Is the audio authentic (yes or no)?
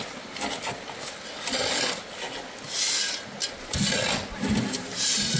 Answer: yes